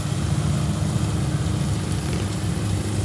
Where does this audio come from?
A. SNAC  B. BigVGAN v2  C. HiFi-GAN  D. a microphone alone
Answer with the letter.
D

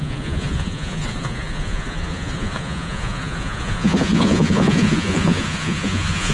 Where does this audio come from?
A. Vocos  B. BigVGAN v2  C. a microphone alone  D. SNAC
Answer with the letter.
A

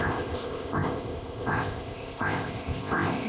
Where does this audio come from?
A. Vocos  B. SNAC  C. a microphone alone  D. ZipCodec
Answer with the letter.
D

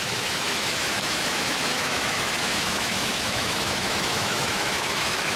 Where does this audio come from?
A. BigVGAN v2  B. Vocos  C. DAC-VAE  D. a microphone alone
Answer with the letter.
C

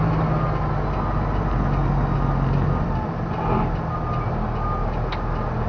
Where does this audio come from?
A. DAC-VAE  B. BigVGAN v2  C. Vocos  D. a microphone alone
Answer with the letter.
D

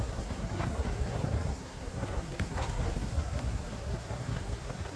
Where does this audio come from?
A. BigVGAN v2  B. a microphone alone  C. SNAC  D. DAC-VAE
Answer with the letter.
C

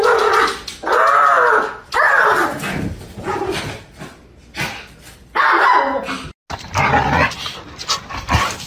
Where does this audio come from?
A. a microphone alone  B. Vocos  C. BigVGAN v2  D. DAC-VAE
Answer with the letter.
A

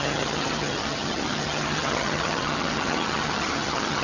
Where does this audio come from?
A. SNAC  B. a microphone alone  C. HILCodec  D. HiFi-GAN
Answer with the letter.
D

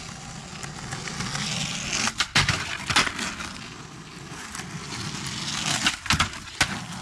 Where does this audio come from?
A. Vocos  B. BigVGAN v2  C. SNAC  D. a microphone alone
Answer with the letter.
D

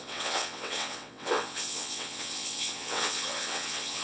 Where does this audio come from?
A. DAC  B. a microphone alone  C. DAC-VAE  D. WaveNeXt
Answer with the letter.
D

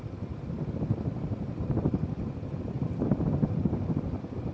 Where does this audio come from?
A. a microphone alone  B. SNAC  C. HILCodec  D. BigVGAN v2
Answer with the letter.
A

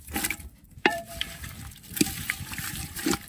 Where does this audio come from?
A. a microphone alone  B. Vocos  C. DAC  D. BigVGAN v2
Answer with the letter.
D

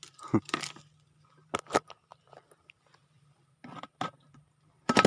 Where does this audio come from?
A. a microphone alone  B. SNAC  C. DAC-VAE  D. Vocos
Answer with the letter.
A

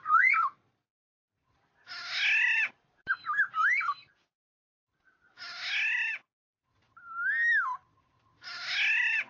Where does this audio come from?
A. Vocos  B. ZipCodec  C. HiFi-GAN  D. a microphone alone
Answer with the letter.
D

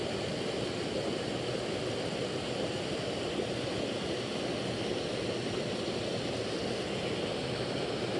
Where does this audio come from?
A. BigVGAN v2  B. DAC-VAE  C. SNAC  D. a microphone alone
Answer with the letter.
D